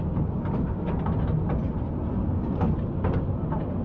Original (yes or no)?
yes